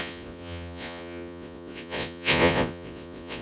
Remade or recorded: remade